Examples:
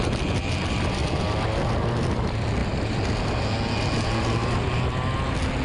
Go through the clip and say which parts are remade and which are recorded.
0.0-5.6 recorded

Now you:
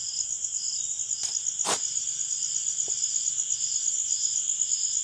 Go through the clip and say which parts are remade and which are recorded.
0.0-5.0 recorded

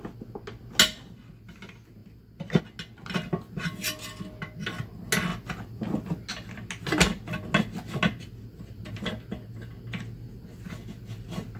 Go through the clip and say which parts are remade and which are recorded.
0.0-8.5 recorded; 8.5-9.0 remade; 9.0-11.6 recorded

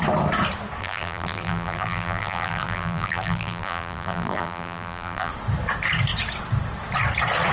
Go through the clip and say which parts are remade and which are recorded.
0.0-0.8 recorded; 0.8-5.3 remade; 5.3-7.5 recorded

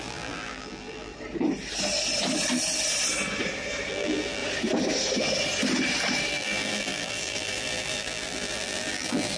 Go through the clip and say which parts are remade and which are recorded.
0.0-1.1 remade; 1.1-3.9 recorded; 3.9-4.4 remade; 4.4-6.3 recorded; 6.3-9.4 remade

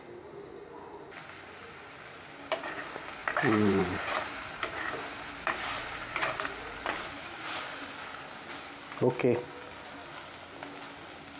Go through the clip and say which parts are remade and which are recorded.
0.0-3.2 recorded; 3.2-7.6 remade; 7.6-11.4 recorded

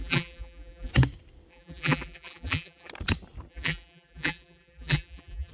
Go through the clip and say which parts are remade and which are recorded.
0.0-0.9 remade; 0.9-1.5 recorded; 1.5-2.9 remade; 2.9-3.5 recorded; 3.5-5.5 remade

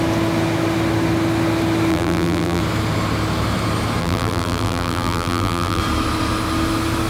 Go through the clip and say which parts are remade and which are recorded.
0.0-1.9 recorded; 1.9-2.6 remade; 2.6-4.0 recorded; 4.0-5.8 remade; 5.8-7.1 recorded